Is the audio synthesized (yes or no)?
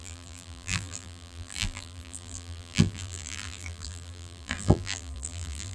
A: yes